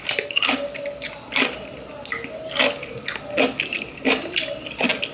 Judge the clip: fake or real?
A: real